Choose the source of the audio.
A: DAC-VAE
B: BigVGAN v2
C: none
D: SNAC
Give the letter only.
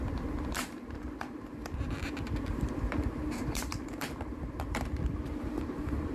B